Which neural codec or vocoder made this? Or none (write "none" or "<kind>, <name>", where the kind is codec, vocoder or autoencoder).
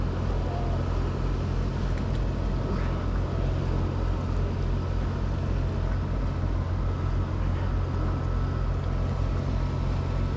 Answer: none